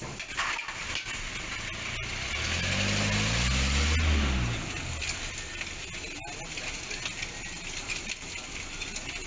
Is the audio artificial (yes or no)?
no